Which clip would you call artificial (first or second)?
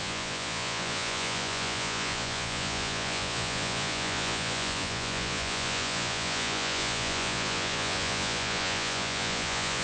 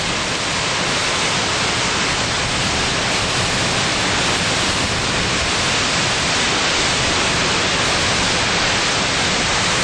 first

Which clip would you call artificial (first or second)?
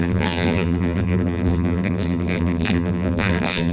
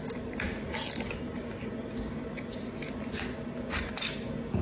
first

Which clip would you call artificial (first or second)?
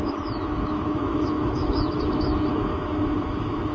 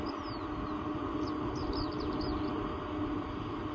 first